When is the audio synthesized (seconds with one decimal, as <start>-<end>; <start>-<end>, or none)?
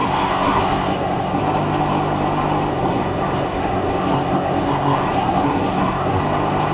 0.0-1.4; 2.7-6.2